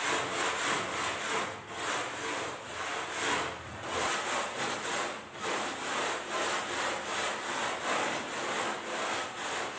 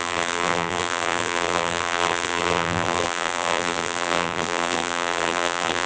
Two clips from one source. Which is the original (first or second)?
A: first